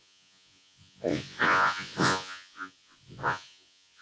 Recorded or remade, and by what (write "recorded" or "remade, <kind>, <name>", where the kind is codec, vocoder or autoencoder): remade, vocoder, Vocos